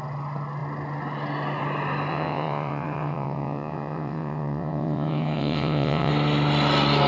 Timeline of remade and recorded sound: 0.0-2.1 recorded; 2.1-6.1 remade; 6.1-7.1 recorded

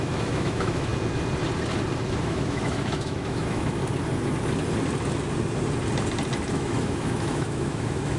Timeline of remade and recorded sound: 0.0-0.9 remade; 0.9-2.2 recorded; 2.2-3.8 remade; 3.8-6.5 recorded; 6.5-8.2 remade

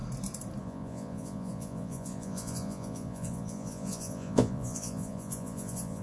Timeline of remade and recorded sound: 0.0-0.6 recorded; 0.6-6.0 remade

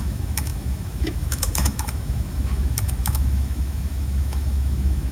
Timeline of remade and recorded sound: 0.0-5.1 remade

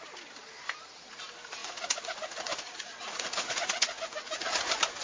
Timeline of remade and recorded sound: 0.0-1.6 recorded; 1.6-4.6 remade; 4.6-5.0 recorded

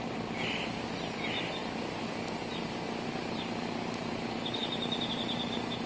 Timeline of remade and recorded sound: 0.0-5.9 recorded

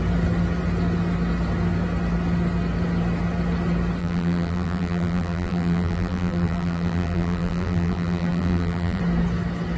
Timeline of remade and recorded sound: 0.0-4.0 recorded; 4.0-9.0 remade; 9.0-9.8 recorded